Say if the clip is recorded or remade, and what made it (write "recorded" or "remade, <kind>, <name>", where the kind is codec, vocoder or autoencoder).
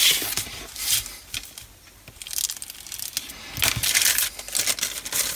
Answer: recorded